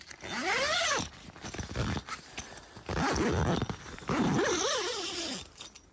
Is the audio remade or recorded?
recorded